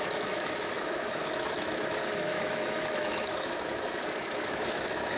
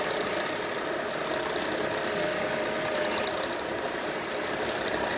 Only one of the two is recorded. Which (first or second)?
second